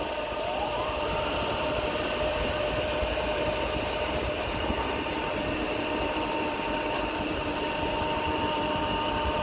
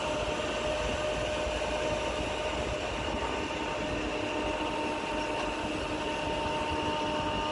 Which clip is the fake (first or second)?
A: first